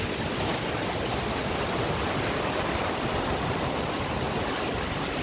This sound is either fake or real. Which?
real